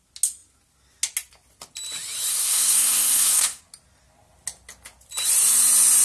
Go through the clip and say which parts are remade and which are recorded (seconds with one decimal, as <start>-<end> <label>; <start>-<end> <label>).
0.0-2.3 recorded; 2.3-3.6 remade; 3.6-6.0 recorded